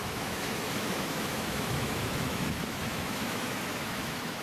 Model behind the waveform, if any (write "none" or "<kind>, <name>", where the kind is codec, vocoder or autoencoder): autoencoder, DAC-VAE